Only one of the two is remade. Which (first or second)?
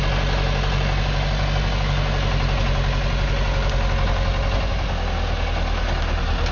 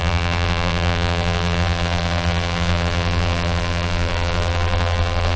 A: second